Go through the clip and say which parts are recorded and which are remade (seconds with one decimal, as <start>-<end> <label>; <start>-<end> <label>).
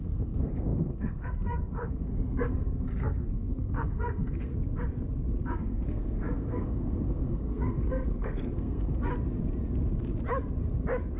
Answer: 0.0-4.5 remade; 4.5-5.4 recorded; 5.4-9.1 remade; 9.1-11.2 recorded